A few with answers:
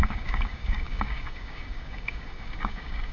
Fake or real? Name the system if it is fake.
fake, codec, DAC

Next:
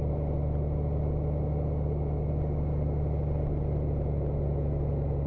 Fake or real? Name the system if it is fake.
real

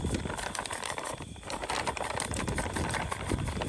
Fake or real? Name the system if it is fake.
real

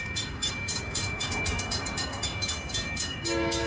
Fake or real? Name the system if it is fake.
fake, codec, DAC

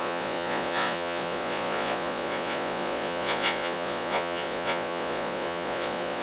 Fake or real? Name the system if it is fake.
fake, vocoder, Vocos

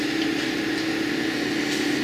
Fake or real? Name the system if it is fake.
real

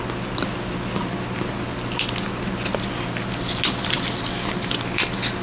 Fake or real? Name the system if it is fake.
real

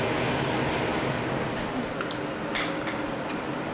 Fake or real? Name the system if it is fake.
real